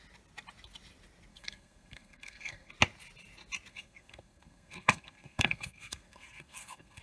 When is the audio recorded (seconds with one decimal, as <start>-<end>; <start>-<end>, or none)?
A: 0.0-1.3; 2.7-3.7